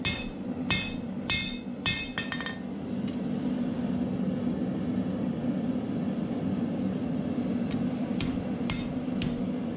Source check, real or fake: real